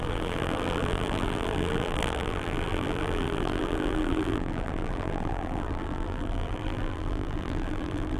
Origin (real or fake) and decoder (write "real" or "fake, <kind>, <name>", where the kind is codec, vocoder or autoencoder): fake, vocoder, BigVGAN v2